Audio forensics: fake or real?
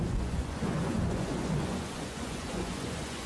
fake